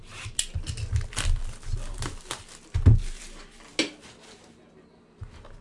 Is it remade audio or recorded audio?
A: recorded